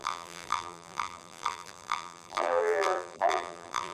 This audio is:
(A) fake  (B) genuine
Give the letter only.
A